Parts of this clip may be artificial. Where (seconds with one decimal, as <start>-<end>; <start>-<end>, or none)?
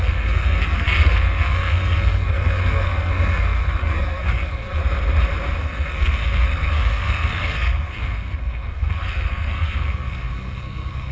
0.0-4.8; 5.6-11.1